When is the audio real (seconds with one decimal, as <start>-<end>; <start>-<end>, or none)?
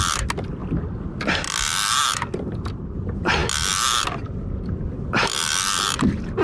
0.0-6.4